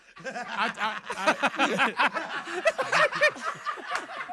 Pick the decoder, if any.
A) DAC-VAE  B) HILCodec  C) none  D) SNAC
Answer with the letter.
C